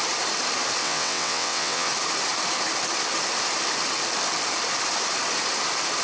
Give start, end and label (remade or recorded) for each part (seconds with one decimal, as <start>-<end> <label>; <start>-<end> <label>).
0.0-0.8 recorded; 0.8-1.9 remade; 1.9-6.0 recorded